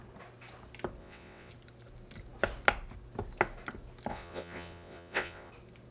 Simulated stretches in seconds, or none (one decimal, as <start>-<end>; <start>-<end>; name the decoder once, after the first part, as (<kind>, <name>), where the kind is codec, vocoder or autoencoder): 1.0-1.5 (vocoder, WaveNeXt); 4.1-5.5